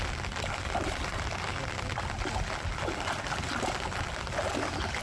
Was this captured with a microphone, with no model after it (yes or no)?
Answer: yes